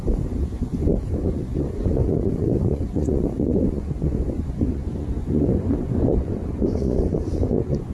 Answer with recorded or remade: remade